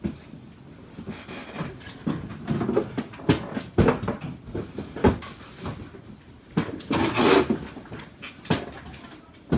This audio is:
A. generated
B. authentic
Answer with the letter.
B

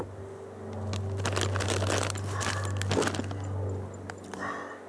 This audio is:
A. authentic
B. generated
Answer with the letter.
A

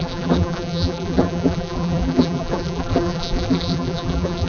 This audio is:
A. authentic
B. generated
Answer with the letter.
B